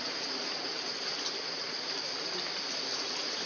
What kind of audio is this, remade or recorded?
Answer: recorded